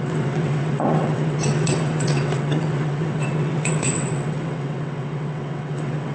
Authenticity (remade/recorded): remade